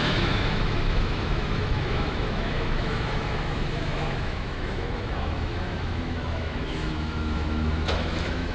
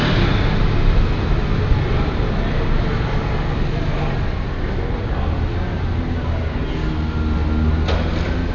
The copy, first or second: first